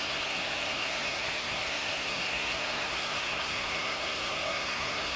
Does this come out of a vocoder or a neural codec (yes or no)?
yes